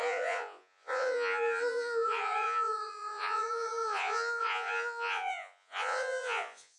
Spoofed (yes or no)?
yes